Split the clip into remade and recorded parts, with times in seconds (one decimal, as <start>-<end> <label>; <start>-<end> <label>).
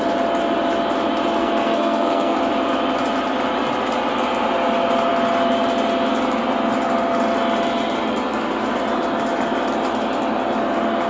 0.0-1.4 recorded; 1.4-2.4 remade; 2.4-11.1 recorded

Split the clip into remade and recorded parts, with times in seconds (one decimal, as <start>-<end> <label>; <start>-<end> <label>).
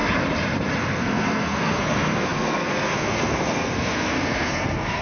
0.0-0.8 recorded; 0.8-5.0 remade